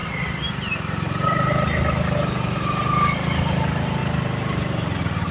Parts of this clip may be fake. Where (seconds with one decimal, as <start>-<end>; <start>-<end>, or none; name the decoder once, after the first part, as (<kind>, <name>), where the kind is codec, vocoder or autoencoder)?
none